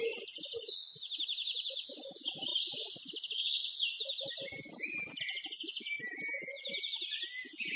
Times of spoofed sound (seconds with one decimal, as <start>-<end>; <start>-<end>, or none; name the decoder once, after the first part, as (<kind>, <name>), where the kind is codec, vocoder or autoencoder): none

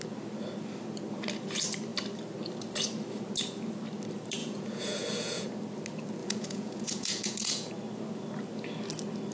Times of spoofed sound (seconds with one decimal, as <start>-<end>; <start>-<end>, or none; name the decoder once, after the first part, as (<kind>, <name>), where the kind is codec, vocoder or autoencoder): 4.4-5.5 (vocoder, Vocos); 6.2-7.7

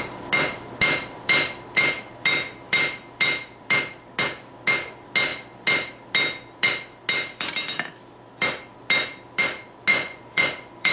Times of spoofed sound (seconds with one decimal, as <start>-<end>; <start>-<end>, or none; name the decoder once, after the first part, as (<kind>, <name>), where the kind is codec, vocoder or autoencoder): 9.9-10.9 (vocoder, Vocos)